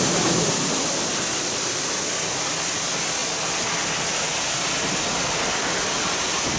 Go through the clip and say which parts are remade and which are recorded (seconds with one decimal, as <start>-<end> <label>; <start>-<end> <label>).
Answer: 0.0-6.6 recorded